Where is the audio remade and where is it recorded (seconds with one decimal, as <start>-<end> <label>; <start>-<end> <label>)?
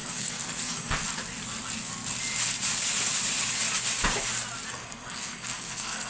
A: 0.0-1.0 remade; 1.0-4.7 recorded; 4.7-6.1 remade